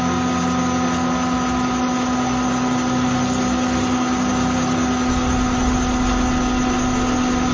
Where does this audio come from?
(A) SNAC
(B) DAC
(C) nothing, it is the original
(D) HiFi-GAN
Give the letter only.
C